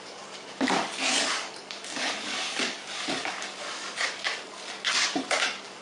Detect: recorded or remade remade